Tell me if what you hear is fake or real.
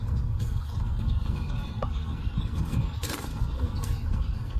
fake